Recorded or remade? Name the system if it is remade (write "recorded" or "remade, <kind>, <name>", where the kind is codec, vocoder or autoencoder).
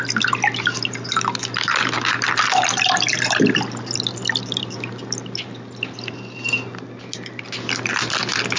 recorded